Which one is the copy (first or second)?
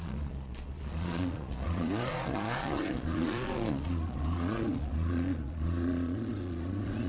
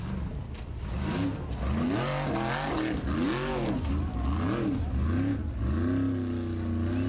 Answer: first